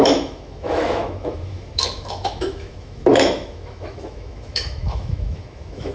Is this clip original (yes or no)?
no